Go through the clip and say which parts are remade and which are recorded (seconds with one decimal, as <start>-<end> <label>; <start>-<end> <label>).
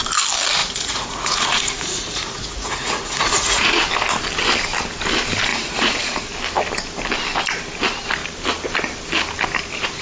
0.0-0.6 recorded; 0.6-3.8 remade; 3.8-5.5 recorded; 5.5-6.3 remade; 6.3-10.0 recorded